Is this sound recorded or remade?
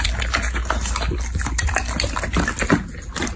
recorded